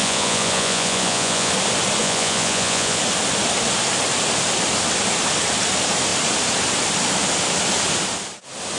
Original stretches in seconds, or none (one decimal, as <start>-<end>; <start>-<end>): 1.5-2.0; 3.0-8.8